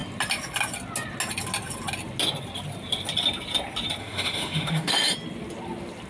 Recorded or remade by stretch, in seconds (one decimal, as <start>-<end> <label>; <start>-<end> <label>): 0.0-4.0 recorded; 4.0-4.9 remade; 4.9-6.1 recorded

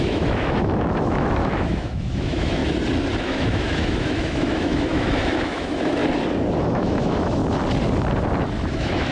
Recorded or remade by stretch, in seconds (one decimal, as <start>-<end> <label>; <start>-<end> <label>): 0.0-2.6 remade; 2.6-3.2 recorded; 3.2-6.0 remade; 6.0-6.6 recorded; 6.6-7.4 remade; 7.4-8.7 recorded; 8.7-9.1 remade